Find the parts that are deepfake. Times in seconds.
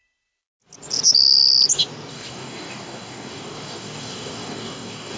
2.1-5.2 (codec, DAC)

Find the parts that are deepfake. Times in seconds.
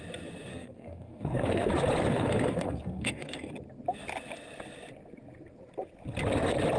0.5-1.7 (codec, SNAC); 2.1-3.5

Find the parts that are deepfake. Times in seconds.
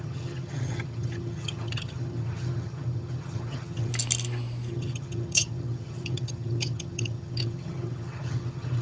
0.0-3.9 (vocoder, HiFi-GAN); 4.7-8.8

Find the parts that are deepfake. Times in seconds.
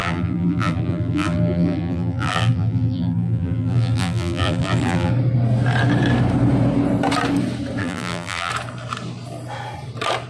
0.0-5.1 (vocoder, BigVGAN v2); 7.8-8.5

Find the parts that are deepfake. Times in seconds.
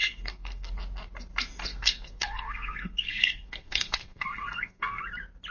0.0-0.7 (codec, SNAC); 1.7-5.0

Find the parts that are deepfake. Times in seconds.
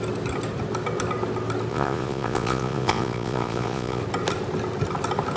1.7-4.0 (vocoder, Vocos)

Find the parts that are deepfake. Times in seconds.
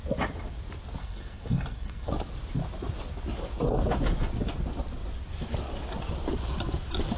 1.0-2.1 (codec, SNAC)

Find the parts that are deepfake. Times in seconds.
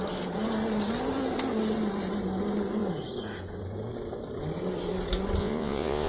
5.4-6.1 (vocoder, Vocos)